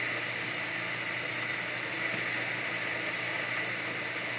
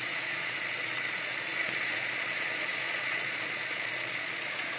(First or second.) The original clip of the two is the first